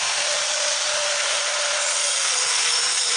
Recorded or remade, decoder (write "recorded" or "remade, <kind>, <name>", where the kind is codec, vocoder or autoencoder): recorded